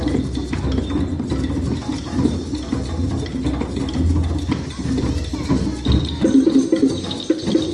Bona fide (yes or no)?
yes